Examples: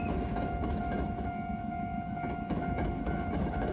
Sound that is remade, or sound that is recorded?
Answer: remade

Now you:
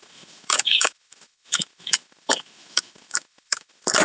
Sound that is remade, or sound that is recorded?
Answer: remade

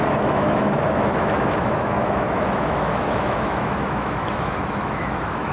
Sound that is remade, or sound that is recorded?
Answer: remade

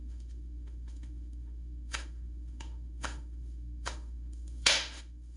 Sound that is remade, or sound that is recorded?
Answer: remade